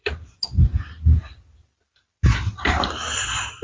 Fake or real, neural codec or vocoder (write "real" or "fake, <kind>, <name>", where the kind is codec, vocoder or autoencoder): real